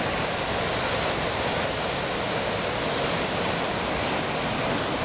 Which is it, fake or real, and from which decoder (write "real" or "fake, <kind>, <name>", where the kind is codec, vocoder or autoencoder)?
real